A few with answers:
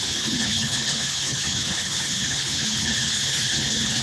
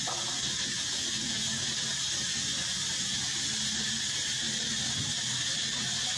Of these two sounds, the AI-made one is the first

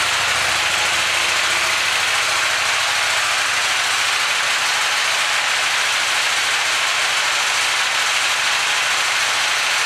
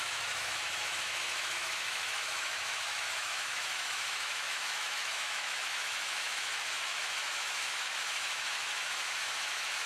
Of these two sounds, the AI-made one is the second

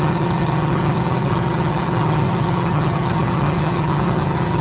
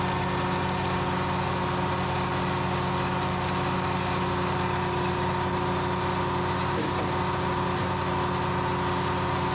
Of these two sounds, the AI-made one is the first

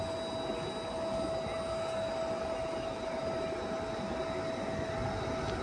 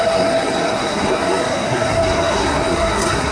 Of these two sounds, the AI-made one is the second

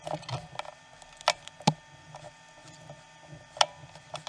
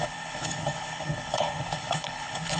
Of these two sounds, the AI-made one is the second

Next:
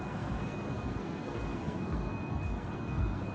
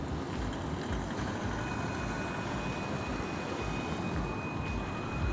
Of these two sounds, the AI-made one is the first